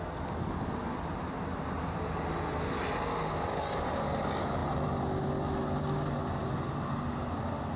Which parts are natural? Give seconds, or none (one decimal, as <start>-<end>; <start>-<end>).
0.0-7.8